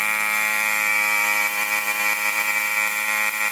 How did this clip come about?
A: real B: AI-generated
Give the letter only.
B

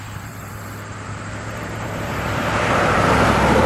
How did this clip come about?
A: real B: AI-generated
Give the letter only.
B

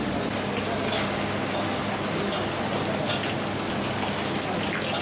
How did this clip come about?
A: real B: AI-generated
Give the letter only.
A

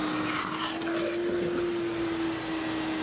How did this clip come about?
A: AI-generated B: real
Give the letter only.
B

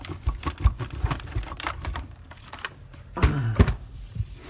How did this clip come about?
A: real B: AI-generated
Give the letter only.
B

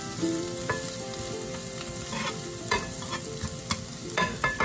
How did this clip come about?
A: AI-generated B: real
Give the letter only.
B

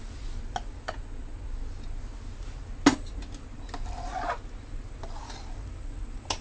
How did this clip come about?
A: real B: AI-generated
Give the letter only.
A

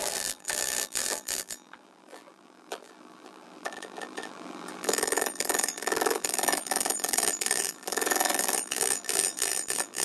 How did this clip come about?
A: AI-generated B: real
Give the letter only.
A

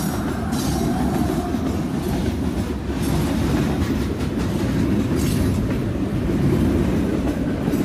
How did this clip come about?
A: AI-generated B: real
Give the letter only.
B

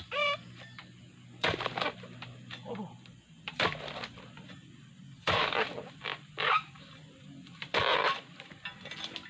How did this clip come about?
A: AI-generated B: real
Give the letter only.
A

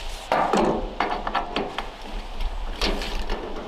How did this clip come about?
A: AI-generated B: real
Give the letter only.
B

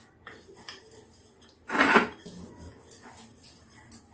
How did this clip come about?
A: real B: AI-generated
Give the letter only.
A